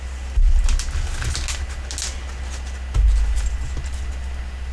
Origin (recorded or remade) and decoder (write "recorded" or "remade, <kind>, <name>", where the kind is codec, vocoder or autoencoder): recorded